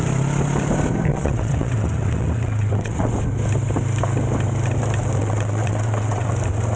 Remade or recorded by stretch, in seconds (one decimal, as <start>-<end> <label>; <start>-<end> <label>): 0.0-1.1 recorded; 1.1-3.1 remade; 3.1-5.2 recorded; 5.2-6.3 remade; 6.3-6.8 recorded